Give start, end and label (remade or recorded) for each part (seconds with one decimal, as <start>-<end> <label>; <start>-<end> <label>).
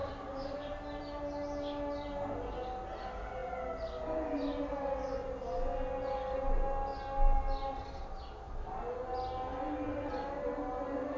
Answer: 0.0-11.2 recorded